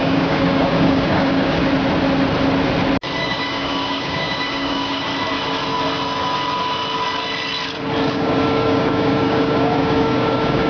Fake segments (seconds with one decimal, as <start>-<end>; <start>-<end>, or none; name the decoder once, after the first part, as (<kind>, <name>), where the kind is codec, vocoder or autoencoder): 0.0-1.6 (codec, DAC); 3.2-5.1; 8.1-10.7